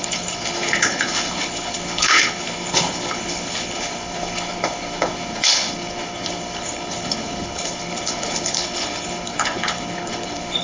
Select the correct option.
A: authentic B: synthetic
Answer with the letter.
B